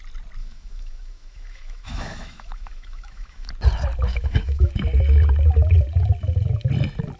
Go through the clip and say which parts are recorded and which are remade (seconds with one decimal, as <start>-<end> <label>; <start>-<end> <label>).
0.0-0.4 recorded; 0.4-3.5 remade; 3.5-4.1 recorded; 4.1-4.7 remade; 4.7-7.2 recorded